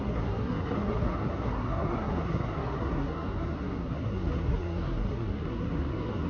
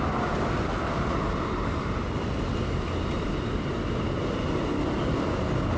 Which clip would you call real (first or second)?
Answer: second